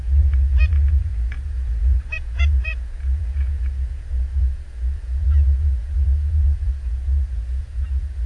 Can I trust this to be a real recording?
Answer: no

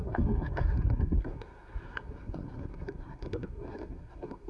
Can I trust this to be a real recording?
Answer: no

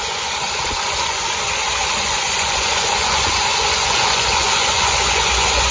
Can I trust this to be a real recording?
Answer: no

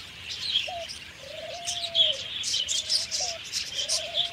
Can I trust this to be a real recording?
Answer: no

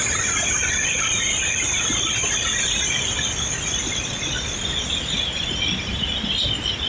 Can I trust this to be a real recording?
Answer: yes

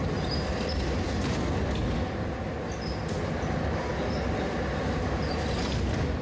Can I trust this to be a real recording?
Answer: yes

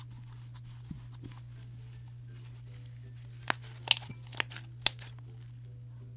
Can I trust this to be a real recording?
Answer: yes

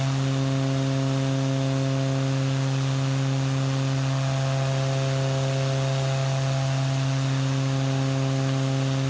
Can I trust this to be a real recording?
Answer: yes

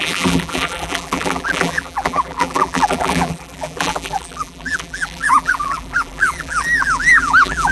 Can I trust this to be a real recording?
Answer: no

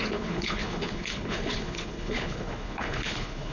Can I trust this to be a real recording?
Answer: no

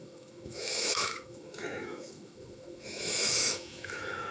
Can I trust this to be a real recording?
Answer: no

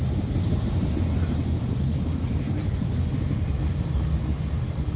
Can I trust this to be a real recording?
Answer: yes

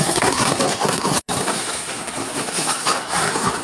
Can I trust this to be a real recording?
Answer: no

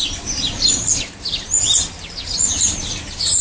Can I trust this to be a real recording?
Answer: yes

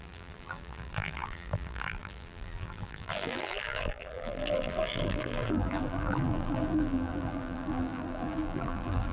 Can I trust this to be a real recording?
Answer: no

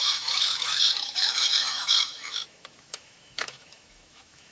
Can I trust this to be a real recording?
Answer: no